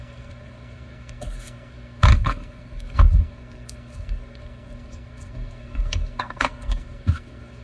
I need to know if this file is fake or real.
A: fake